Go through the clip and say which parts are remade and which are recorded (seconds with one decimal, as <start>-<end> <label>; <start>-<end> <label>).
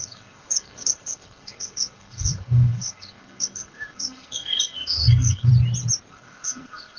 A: 0.0-5.5 remade; 5.5-6.1 recorded; 6.1-7.0 remade